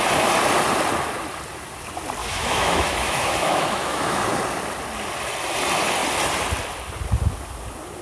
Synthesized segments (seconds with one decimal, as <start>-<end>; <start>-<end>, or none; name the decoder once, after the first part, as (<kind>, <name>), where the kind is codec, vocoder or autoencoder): 2.2-4.2 (autoencoder, DAC-VAE)